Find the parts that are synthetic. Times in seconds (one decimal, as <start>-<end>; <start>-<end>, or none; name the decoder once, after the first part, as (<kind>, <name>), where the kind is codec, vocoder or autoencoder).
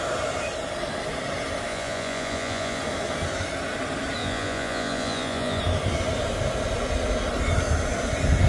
1.7-2.8 (vocoder, Vocos); 4.2-5.6